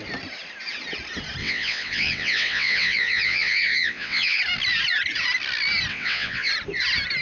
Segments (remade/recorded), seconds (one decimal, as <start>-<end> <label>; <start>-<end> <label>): 0.0-1.4 recorded; 1.4-4.4 remade; 4.4-5.9 recorded; 5.9-6.5 remade; 6.5-7.2 recorded